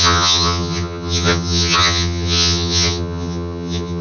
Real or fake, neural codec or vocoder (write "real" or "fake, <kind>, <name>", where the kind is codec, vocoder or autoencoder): fake, vocoder, HiFi-GAN